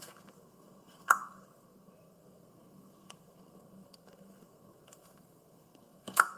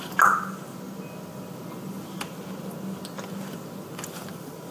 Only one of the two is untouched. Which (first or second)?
second